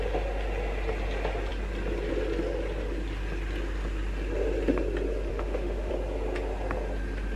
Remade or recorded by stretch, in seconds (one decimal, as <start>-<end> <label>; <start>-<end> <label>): 0.0-5.3 recorded; 5.3-5.9 remade; 5.9-7.4 recorded